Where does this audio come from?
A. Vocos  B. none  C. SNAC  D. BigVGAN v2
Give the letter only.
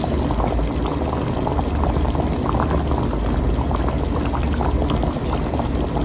B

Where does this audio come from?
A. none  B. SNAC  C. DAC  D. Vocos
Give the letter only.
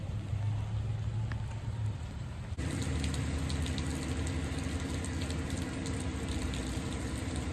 A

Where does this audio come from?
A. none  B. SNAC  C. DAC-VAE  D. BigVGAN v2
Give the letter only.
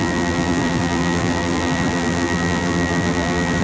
D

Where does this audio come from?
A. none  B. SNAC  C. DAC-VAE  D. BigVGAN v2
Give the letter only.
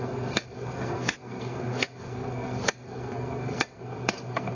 B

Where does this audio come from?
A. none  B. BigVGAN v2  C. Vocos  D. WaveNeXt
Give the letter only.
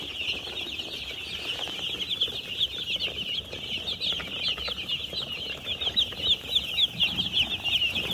A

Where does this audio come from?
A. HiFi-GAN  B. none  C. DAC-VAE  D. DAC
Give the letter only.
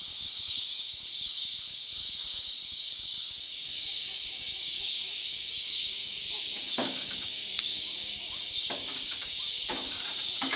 D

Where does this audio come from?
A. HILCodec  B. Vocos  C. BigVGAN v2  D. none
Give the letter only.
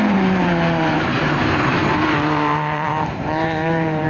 C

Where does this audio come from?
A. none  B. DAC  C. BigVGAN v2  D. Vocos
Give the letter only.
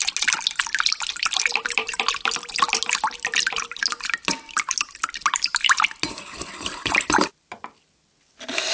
A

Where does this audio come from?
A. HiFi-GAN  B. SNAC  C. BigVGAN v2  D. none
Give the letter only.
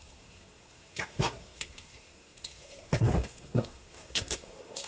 B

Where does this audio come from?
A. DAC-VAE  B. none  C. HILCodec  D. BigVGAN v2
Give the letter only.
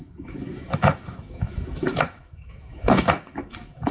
A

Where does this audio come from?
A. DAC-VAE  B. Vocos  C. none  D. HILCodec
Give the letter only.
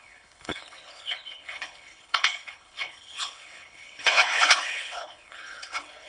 D